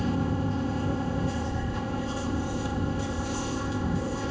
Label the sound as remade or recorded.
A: remade